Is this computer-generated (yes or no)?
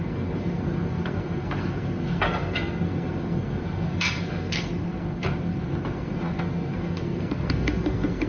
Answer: yes